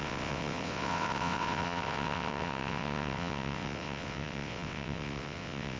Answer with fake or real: fake